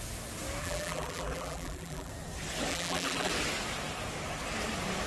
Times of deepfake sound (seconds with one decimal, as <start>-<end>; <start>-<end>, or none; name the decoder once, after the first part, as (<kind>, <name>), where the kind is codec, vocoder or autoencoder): 0.6-2.1 (vocoder, BigVGAN v2); 2.7-3.3